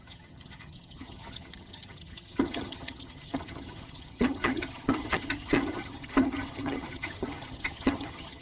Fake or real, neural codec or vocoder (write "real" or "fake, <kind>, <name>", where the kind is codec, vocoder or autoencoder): fake, vocoder, HiFi-GAN